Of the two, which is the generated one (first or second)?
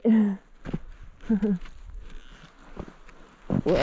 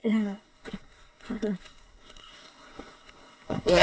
second